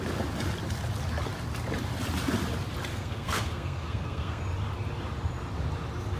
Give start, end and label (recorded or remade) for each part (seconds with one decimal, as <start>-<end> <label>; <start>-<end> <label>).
0.0-2.9 recorded; 2.9-4.4 remade; 4.4-6.2 recorded